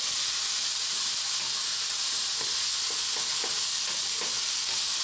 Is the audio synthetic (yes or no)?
no